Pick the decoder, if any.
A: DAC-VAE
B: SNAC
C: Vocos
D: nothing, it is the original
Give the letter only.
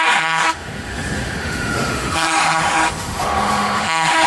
A